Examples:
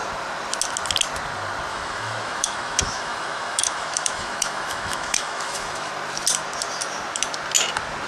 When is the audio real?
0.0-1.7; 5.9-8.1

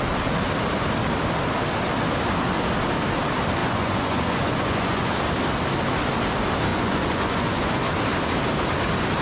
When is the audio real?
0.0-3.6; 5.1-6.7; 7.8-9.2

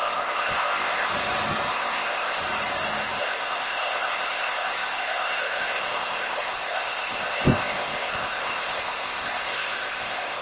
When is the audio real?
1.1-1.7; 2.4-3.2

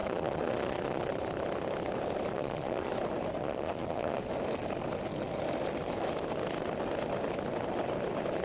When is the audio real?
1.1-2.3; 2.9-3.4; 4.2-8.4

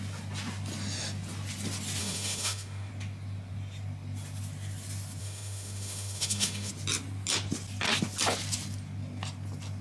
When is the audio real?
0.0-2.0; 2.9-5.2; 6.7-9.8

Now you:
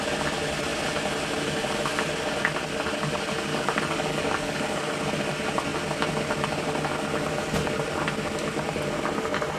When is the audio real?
0.0-3.5; 5.0-9.6

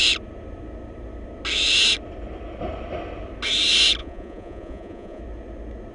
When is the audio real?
0.0-4.0; 5.2-5.9